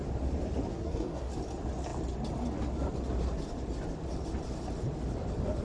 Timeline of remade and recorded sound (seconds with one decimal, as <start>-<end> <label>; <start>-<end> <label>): 0.0-0.7 recorded; 0.7-1.3 remade; 1.3-5.6 recorded